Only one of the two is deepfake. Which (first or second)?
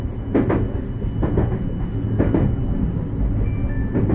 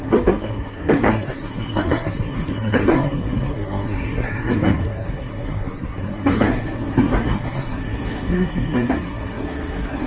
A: second